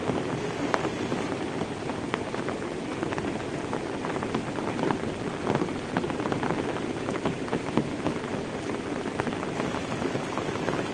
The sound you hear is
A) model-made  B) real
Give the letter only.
B